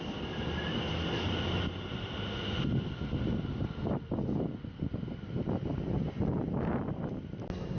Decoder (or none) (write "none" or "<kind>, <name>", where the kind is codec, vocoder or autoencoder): none